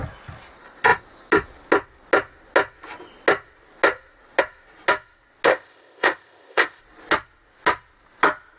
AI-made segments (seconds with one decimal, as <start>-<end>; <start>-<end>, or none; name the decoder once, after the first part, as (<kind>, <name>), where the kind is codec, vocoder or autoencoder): 5.5-6.8 (codec, ZipCodec)